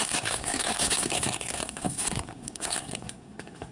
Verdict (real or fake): fake